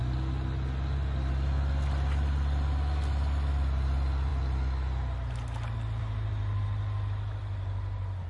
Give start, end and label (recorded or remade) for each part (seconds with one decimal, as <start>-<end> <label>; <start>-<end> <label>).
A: 0.0-8.3 recorded